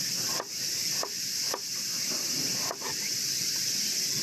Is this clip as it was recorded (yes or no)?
no